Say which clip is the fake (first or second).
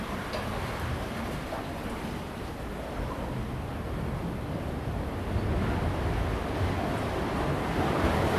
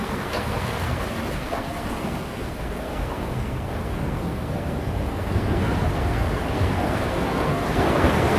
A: second